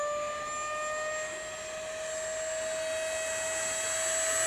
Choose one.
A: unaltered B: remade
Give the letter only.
A